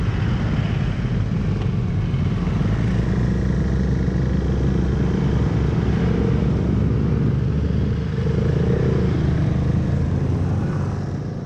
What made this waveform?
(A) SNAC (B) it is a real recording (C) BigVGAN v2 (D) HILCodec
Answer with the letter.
B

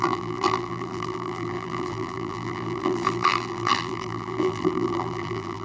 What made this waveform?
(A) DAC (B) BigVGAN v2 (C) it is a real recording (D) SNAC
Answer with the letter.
B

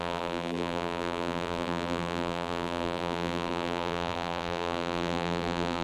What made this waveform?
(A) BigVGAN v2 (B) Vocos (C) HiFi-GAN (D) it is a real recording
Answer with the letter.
A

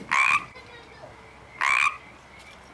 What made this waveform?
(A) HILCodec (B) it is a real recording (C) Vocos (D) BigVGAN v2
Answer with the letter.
B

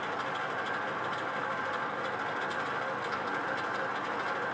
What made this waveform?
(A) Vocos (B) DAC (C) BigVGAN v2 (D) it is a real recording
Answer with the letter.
D